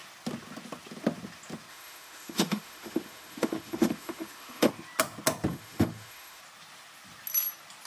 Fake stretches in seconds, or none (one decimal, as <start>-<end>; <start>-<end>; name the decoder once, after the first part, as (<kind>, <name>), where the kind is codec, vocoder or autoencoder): 1.7-4.7 (autoencoder, DAC-VAE); 5.5-6.4